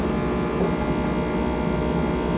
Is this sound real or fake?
real